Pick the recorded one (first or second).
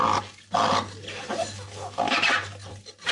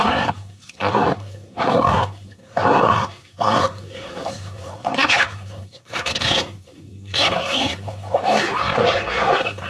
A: first